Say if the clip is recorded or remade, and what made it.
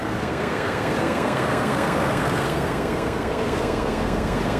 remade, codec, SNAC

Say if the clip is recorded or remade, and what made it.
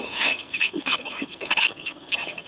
remade, codec, SNAC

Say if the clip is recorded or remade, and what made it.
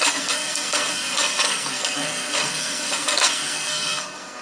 remade, codec, SNAC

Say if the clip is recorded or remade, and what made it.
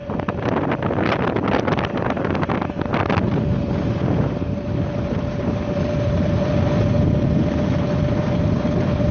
recorded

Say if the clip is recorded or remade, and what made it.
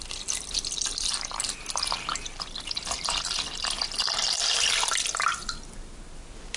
recorded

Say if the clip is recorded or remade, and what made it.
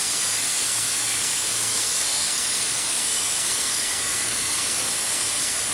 remade, codec, SNAC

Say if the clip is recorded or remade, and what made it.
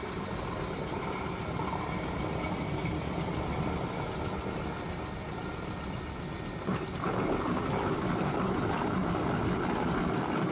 recorded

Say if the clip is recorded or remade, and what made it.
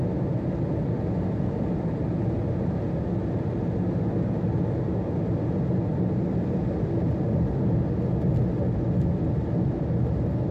recorded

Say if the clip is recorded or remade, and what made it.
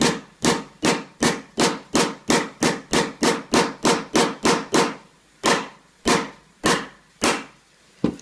recorded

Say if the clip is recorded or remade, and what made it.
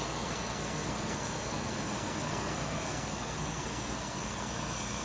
remade, codec, SNAC